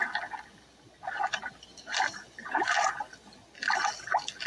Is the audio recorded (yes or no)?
yes